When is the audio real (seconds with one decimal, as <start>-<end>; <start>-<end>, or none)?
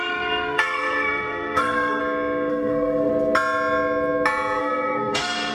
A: 2.0-2.5; 3.1-4.6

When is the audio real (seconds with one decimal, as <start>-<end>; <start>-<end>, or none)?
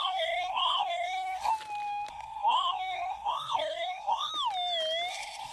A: 1.5-2.1; 4.3-5.1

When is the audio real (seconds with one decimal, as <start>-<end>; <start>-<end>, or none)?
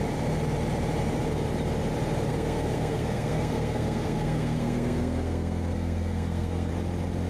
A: 0.0-2.3; 6.7-7.3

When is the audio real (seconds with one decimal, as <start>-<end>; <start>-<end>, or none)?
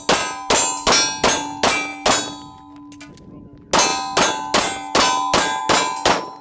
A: 0.0-6.4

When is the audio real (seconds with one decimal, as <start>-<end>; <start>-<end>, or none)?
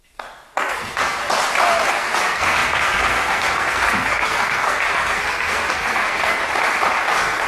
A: 1.2-1.9; 6.4-7.0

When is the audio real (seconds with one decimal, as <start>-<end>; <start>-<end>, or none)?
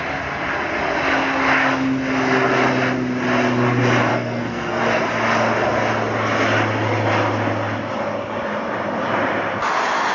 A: 0.0-4.1; 4.8-10.1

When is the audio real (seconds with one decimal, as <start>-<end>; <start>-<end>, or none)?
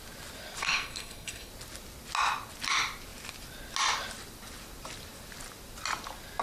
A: 0.0-0.6; 1.5-6.4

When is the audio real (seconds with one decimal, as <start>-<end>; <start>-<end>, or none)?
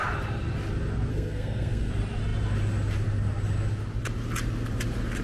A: 0.0-1.1; 1.9-5.2